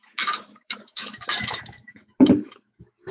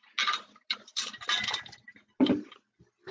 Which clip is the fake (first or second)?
first